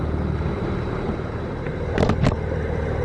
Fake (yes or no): no